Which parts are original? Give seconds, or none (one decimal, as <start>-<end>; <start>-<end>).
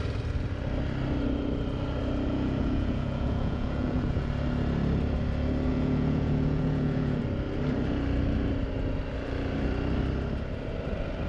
0.0-2.3; 4.3-5.7; 7.2-11.3